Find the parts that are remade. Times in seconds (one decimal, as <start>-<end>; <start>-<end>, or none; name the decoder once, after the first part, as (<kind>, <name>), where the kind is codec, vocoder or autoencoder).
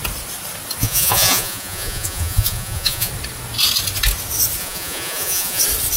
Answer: 0.8-3.1 (vocoder, Vocos); 4.6-5.6